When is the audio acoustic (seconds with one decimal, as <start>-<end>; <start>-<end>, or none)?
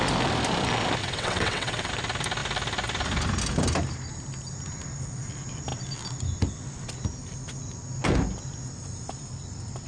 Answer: 0.0-1.0; 1.9-9.9